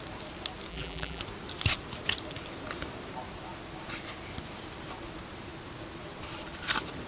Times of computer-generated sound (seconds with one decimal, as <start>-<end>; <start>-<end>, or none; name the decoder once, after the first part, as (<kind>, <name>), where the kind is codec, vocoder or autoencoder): 0.7-1.2 (vocoder, BigVGAN v2)